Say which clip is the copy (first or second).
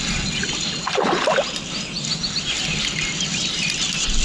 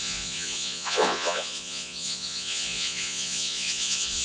second